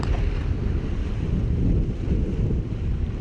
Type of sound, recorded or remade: recorded